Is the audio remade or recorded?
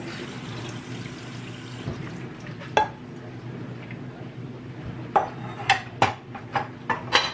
recorded